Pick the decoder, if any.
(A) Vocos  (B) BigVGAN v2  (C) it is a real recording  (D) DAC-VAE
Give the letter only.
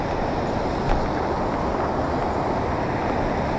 C